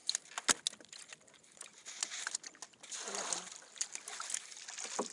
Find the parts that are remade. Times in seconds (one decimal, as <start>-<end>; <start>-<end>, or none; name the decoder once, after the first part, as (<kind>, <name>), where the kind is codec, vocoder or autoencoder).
none